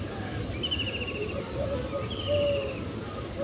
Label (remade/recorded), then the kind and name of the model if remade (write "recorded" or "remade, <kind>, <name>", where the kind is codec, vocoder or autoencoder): recorded